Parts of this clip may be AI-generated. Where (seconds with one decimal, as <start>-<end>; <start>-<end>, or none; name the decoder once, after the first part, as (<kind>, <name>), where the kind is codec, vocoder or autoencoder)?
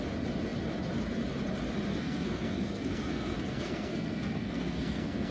1.9-5.3 (codec, SNAC)